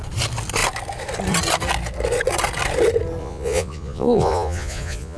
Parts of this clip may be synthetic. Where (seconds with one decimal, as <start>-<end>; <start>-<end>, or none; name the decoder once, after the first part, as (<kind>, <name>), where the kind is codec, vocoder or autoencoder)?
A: 3.2-5.2 (vocoder, Vocos)